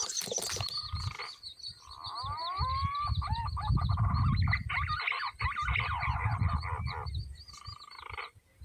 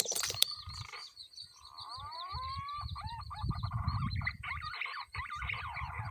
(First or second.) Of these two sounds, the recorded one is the first